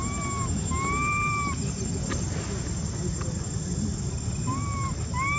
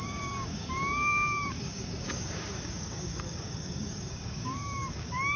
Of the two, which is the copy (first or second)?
second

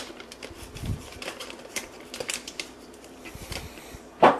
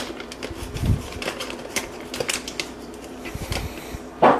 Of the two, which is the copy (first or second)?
first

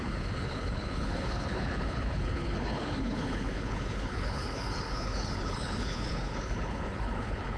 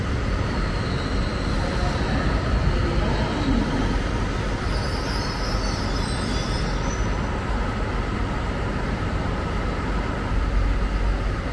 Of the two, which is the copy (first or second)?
first